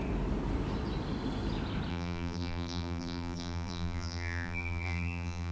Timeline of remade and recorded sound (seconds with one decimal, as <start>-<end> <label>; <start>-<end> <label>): 0.0-1.9 recorded; 1.9-5.5 remade